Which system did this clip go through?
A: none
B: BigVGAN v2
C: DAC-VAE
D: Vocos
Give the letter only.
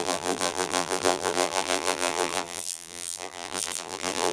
B